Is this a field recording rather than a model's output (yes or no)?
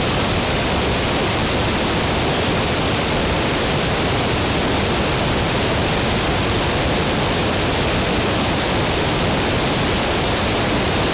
yes